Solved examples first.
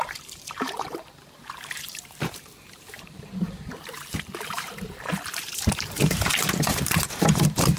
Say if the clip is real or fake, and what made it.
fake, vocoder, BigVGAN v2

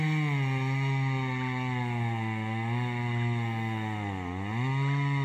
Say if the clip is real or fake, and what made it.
real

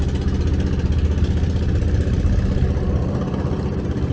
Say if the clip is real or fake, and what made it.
real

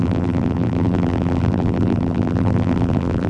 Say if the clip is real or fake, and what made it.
fake, vocoder, BigVGAN v2